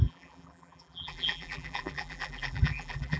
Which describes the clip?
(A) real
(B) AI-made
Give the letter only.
B